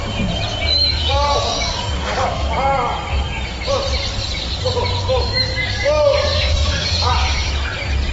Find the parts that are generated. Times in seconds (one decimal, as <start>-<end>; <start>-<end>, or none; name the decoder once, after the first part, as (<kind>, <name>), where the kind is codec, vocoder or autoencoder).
0.7-2.5 (codec, DAC); 5.5-7.1